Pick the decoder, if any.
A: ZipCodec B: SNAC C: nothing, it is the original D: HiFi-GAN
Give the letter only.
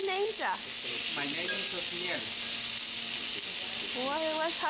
C